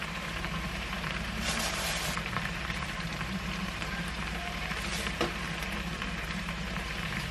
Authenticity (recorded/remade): remade